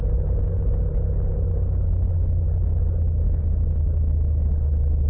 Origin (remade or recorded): recorded